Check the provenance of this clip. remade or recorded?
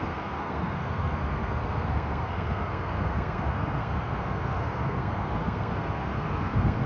remade